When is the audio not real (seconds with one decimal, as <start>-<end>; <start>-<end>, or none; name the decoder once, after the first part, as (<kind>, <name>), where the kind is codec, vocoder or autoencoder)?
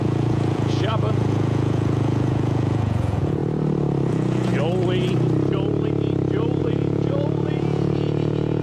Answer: 0.0-3.4 (vocoder, Vocos); 4.1-4.5; 6.6-8.6